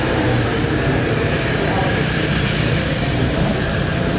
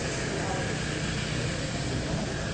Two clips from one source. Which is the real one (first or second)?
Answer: second